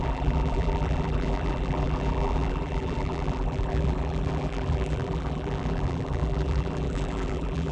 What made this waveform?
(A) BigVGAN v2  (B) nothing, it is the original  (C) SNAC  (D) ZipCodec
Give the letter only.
A